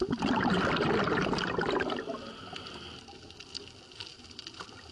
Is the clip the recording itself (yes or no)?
yes